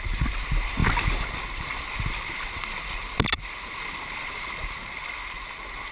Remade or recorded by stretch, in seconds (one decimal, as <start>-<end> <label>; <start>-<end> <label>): 0.0-5.9 recorded